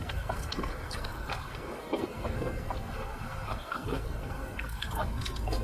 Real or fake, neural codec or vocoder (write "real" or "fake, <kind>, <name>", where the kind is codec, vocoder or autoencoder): fake, codec, SNAC